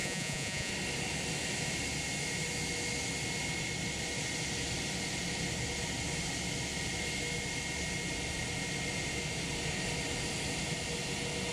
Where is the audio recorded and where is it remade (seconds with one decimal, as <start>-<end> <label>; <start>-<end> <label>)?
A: 0.0-0.7 remade; 0.7-11.5 recorded